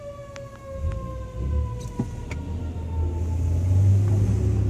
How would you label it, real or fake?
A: real